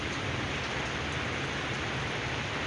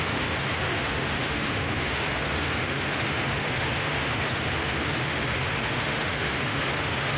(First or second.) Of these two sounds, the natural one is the first